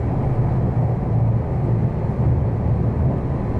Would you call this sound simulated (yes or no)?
no